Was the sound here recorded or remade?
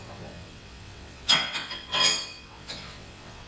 remade